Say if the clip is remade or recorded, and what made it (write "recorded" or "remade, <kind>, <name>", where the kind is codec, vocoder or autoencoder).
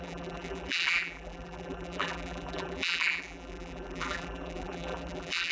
remade, vocoder, BigVGAN v2